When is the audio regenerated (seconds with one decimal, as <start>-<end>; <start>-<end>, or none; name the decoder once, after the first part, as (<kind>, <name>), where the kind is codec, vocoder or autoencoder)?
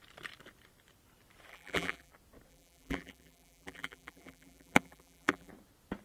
1.5-2.1 (vocoder, BigVGAN v2); 2.5-5.5